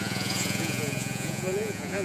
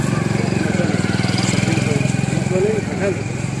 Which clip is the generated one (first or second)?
first